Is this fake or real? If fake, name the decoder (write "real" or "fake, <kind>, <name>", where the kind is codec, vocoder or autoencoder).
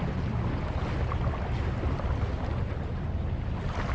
real